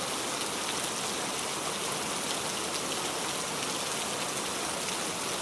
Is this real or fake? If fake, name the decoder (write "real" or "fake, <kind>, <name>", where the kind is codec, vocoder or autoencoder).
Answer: real